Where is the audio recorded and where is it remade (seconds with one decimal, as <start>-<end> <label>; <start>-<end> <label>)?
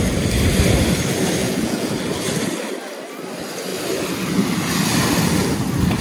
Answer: 0.0-1.4 recorded; 1.4-1.9 remade; 1.9-6.0 recorded